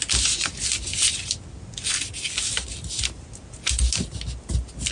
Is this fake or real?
real